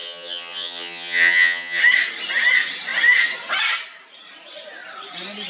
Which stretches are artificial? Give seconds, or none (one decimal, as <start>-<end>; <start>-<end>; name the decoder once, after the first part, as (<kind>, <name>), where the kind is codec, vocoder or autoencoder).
0.0-1.8 (vocoder, HiFi-GAN)